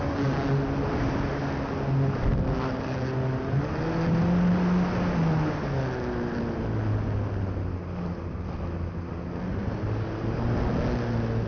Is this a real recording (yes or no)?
yes